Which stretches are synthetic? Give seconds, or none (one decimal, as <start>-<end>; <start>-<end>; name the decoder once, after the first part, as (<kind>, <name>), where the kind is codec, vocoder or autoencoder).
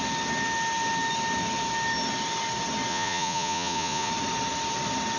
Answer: 2.9-4.1 (vocoder, Vocos)